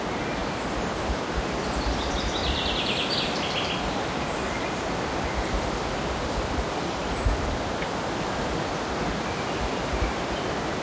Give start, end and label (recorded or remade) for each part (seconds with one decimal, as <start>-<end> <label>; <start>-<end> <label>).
0.0-10.8 recorded